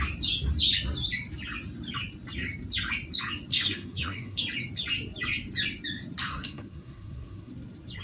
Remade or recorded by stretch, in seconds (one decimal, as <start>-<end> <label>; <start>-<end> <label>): 0.0-3.5 recorded; 3.5-4.4 remade; 4.4-6.3 recorded; 6.3-7.5 remade; 7.5-8.0 recorded